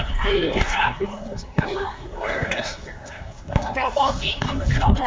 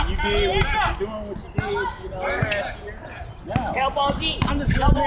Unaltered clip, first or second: second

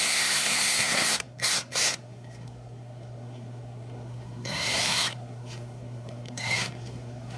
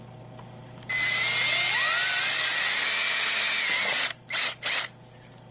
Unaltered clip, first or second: second